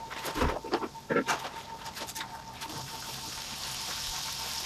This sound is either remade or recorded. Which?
remade